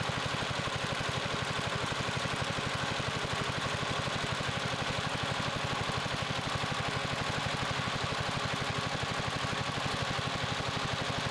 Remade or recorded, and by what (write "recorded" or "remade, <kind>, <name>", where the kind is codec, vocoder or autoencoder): recorded